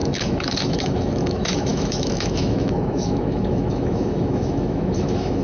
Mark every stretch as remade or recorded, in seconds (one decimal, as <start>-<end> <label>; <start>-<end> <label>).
0.0-5.4 remade